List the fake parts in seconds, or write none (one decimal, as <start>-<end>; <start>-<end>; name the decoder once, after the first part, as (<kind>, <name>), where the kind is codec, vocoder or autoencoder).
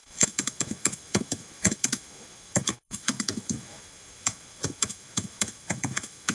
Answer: 0.0-6.3 (autoencoder, DAC-VAE)